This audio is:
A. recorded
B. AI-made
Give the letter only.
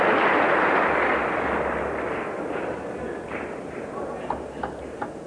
A